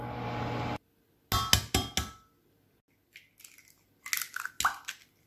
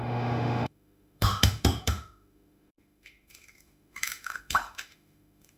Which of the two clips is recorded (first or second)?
first